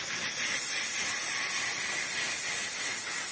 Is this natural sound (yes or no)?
yes